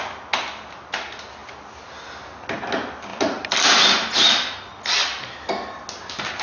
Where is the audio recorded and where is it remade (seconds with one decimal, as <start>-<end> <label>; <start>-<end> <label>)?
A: 0.0-3.1 recorded; 3.1-3.8 remade; 3.8-4.7 recorded; 4.7-5.8 remade; 5.8-6.4 recorded